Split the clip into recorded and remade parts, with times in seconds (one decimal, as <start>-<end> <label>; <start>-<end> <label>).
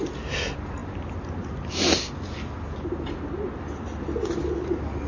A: 0.0-5.1 recorded